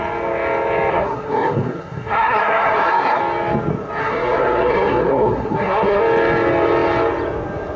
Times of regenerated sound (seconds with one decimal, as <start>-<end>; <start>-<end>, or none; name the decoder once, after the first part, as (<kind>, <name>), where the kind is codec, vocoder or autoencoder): 0.9-3.2 (codec, SNAC); 4.0-6.0